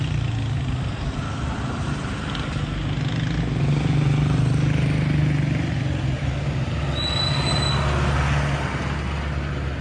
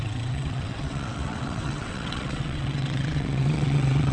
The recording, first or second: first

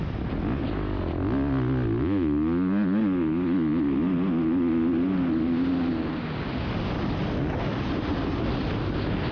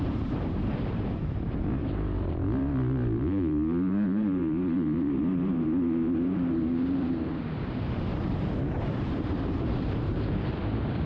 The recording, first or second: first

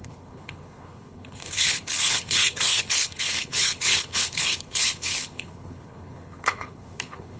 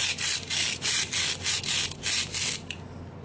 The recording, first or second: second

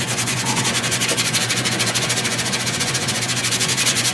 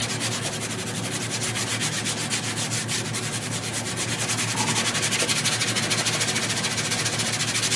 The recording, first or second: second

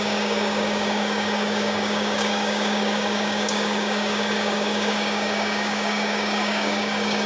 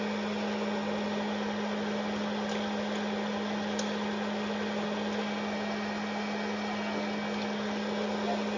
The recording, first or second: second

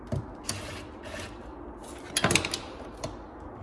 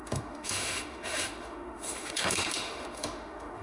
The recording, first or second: first